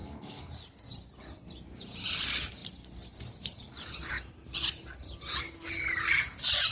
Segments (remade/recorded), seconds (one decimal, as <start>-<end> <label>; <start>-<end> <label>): 0.0-0.5 remade; 0.5-6.7 recorded